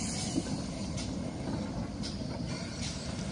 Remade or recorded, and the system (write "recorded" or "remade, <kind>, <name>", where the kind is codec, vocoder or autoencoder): recorded